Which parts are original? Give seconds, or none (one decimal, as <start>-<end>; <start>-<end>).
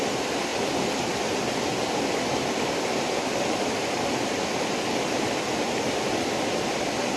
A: 0.0-7.2